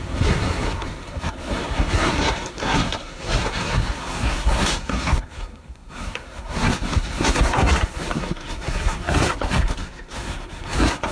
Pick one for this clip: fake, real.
fake